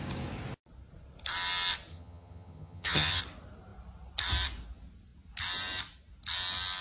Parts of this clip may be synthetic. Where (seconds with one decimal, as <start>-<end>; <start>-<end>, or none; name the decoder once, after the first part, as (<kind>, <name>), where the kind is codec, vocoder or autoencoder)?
1.9-3.2 (vocoder, HiFi-GAN)